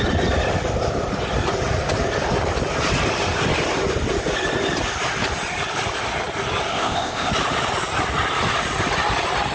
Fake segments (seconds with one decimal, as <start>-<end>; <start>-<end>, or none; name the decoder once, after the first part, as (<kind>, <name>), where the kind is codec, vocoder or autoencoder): 6.7-7.3 (codec, ZipCodec)